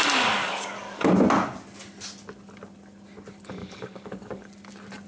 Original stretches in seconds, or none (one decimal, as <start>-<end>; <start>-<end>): 1.1-3.6; 4.5-5.1

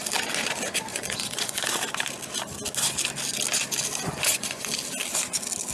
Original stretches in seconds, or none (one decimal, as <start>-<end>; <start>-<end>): 0.0-0.9; 1.6-4.1; 4.7-5.7

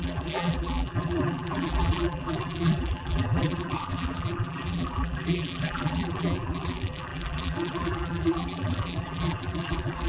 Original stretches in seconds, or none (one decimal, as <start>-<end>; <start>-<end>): none

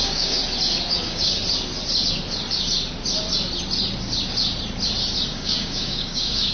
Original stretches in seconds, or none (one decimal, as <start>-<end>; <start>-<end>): 0.4-0.9; 1.4-5.3

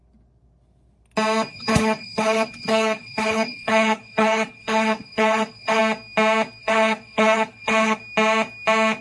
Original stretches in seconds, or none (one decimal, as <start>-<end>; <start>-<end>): 0.0-1.5; 5.8-6.6; 8.0-9.0

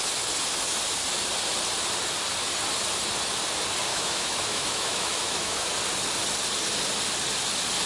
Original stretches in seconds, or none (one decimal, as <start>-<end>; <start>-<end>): 0.0-3.9; 5.7-7.9

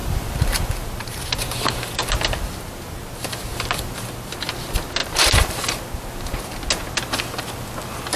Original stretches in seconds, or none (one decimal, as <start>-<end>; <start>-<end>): 2.1-3.5; 4.3-5.0; 5.7-8.2

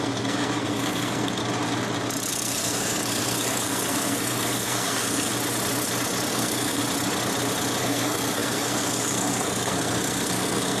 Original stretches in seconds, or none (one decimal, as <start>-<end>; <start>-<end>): 1.4-2.3; 5.3-6.3; 6.8-7.8